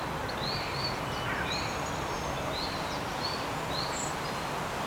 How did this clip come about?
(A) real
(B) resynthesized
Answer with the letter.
A